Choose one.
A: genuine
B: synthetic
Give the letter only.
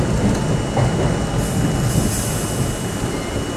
A